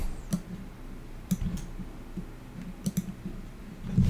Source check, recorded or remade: recorded